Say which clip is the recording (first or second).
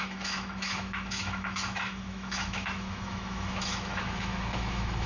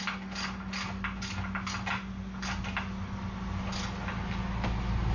second